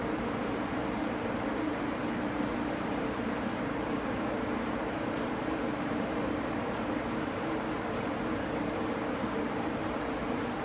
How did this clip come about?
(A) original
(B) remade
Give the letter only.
B